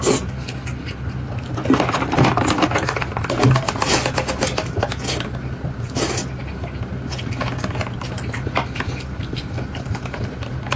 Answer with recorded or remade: recorded